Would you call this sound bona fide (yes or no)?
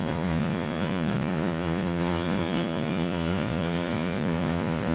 no